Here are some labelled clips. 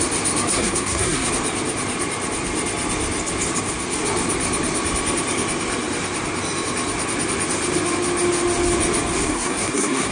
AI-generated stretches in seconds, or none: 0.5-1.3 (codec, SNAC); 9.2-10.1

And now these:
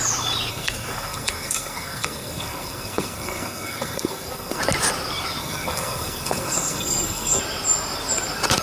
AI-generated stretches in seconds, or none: 0.5-4.6 (codec, SNAC); 5.4-7.4

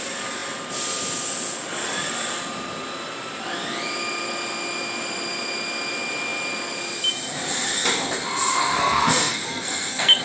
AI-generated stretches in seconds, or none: 8.5-10.2 (codec, SNAC)

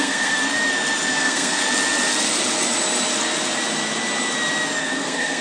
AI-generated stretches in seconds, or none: 0.0-0.4 (codec, SNAC); 1.1-1.6; 4.8-5.4

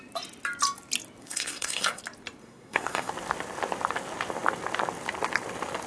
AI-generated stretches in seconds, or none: 1.2-2.0 (codec, SNAC); 2.4-3.1

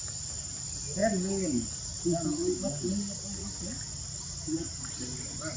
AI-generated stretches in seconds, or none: none

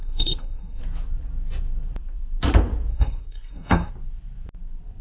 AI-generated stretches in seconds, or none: 0.0-0.8 (codec, SNAC); 2.9-3.9